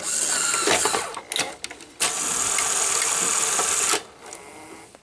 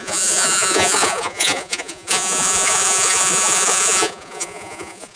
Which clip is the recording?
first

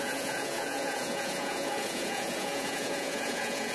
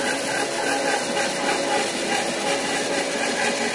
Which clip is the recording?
second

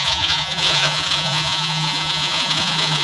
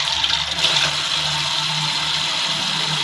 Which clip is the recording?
second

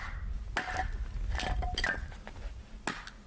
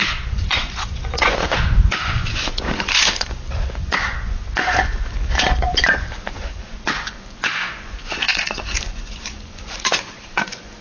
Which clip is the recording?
first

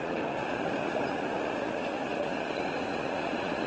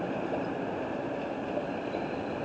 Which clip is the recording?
second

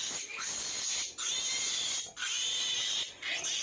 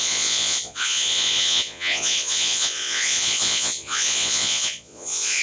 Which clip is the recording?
first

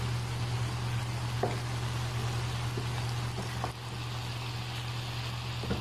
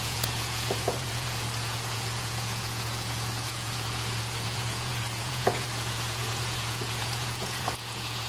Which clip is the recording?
first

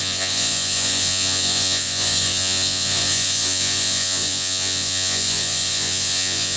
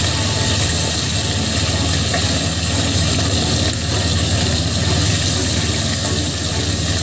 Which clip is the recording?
second